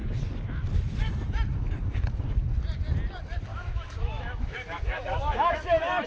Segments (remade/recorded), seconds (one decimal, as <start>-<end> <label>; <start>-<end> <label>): 0.0-3.5 recorded; 3.5-6.1 remade